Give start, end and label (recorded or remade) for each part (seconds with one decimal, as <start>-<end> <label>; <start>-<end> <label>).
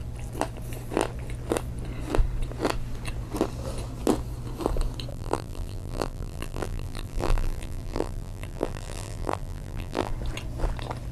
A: 0.0-5.1 recorded; 5.1-10.1 remade; 10.1-11.1 recorded